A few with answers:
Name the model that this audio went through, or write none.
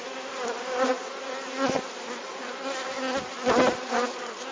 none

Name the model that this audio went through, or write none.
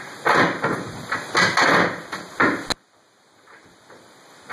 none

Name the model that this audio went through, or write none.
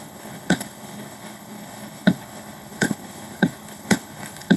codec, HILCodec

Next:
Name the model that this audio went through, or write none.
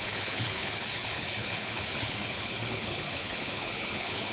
codec, HILCodec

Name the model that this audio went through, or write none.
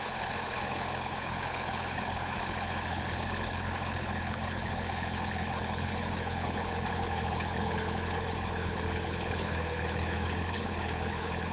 codec, HILCodec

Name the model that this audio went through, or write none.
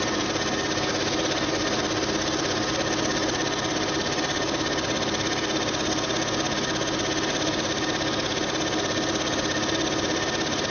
none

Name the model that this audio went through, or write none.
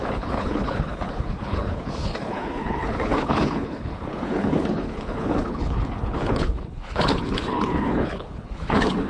codec, HILCodec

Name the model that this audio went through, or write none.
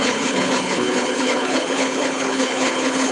codec, HILCodec